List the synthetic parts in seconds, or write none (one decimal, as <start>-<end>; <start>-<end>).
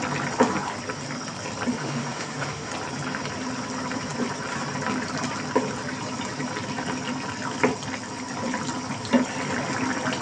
1.7-2.7